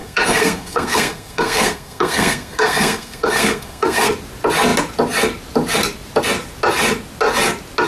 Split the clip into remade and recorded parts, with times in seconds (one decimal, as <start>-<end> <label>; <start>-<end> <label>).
0.0-4.1 remade; 4.1-7.9 recorded